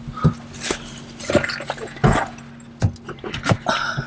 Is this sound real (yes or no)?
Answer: yes